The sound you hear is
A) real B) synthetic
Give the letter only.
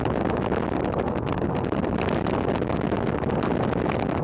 A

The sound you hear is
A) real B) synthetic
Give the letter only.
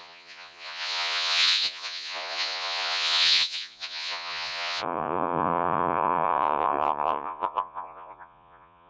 B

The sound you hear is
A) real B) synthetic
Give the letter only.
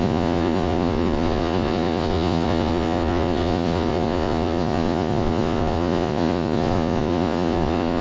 B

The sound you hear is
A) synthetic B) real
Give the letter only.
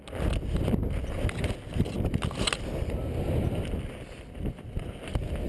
B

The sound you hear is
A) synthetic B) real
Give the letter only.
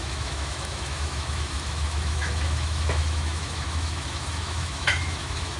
A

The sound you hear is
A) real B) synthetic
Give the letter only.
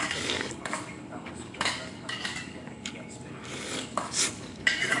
B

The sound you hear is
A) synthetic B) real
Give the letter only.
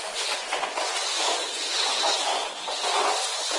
A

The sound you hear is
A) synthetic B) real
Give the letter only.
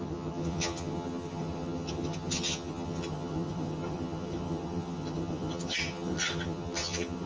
A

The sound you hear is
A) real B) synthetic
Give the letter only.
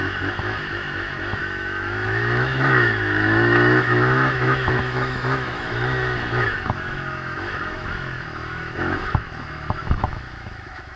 B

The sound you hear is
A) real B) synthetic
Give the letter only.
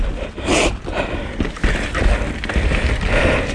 A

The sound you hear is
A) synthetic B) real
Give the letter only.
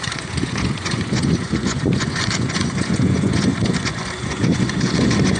A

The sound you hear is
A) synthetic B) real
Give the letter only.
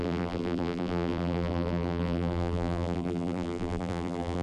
A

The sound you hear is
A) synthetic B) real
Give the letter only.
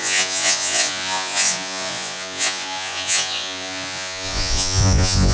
A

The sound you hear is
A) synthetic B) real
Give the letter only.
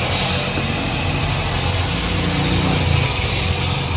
B